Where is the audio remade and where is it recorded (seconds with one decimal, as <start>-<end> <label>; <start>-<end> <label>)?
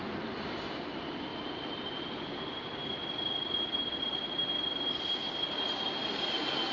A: 0.0-6.7 recorded